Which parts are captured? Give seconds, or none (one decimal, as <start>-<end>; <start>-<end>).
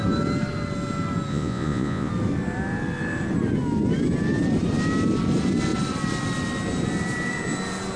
0.0-1.3; 2.1-8.0